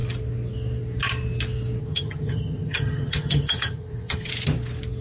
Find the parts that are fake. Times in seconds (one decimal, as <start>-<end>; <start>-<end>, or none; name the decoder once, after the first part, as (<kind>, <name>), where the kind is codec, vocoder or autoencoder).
1.8-4.3 (vocoder, HiFi-GAN)